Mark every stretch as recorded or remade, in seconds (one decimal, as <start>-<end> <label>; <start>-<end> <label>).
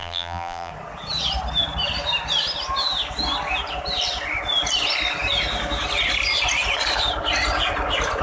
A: 0.0-0.7 remade; 0.7-8.2 recorded